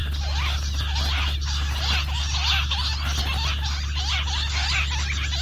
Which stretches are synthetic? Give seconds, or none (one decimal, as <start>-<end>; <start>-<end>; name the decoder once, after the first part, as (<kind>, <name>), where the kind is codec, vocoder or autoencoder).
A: none